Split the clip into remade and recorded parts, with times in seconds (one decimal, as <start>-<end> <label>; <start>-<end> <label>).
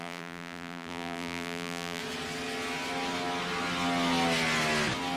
0.0-2.0 remade; 2.0-5.2 recorded